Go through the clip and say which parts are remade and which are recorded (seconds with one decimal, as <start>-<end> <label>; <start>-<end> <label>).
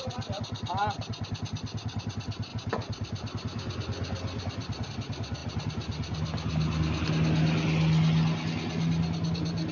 0.0-9.7 recorded